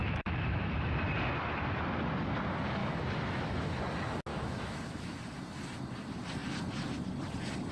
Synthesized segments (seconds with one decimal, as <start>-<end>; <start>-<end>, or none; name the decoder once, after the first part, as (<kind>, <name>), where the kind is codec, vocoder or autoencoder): 0.0-1.0 (autoencoder, DAC-VAE); 2.8-3.8; 4.3-5.2